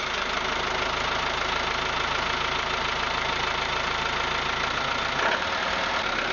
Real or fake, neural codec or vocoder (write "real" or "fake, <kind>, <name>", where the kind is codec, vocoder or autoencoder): real